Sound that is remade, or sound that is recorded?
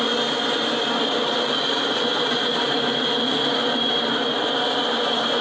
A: recorded